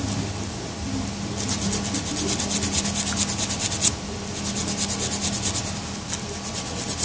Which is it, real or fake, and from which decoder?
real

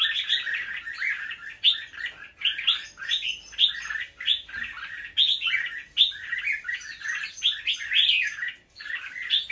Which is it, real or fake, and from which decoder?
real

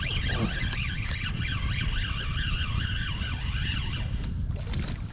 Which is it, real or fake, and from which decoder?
real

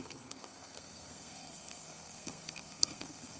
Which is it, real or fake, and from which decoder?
fake, codec, SNAC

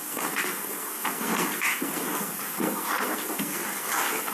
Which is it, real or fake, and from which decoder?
fake, codec, SNAC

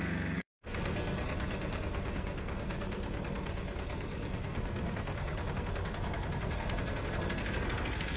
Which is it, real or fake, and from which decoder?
fake, codec, SNAC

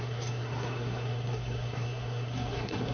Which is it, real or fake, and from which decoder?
fake, codec, SNAC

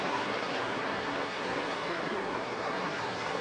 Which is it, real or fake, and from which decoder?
fake, codec, SNAC